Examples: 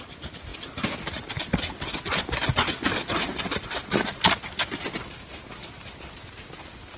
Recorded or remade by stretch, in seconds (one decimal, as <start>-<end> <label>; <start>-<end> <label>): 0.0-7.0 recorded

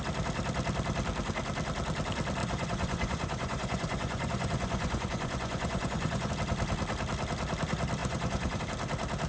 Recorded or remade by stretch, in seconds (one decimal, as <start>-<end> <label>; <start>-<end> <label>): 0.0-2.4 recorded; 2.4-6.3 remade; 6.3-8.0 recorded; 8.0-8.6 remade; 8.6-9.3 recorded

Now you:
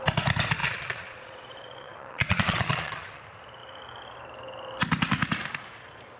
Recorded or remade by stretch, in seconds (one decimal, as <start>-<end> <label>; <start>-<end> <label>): 0.0-0.6 recorded; 0.6-3.2 remade; 3.2-6.2 recorded

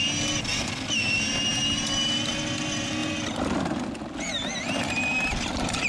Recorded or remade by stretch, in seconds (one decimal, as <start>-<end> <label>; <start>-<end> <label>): 0.0-5.9 recorded

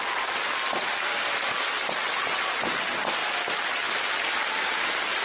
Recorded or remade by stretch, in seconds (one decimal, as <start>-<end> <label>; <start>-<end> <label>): 0.0-5.2 recorded

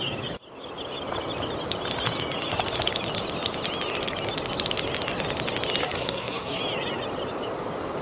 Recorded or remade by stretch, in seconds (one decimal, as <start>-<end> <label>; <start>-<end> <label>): 0.0-5.8 recorded; 5.8-6.6 remade; 6.6-8.0 recorded

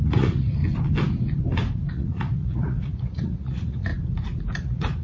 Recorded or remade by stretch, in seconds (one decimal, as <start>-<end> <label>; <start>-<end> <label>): 0.0-0.6 remade; 0.6-1.9 recorded; 1.9-3.9 remade; 3.9-4.6 recorded; 4.6-5.0 remade

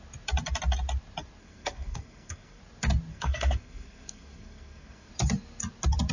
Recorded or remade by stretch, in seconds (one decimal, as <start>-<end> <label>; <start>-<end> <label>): 0.0-1.4 recorded; 1.4-2.6 remade; 2.6-3.1 recorded; 3.1-5.1 remade; 5.1-6.1 recorded